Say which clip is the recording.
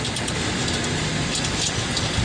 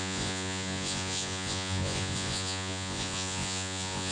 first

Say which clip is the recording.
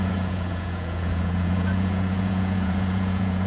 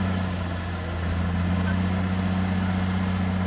second